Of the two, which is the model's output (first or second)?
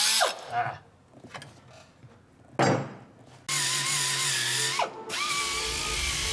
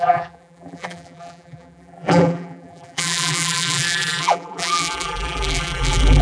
second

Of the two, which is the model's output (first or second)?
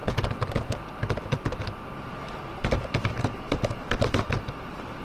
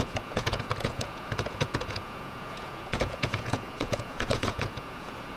second